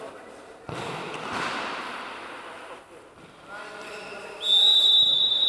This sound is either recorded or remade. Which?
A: recorded